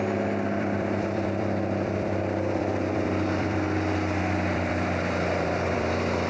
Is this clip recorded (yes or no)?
no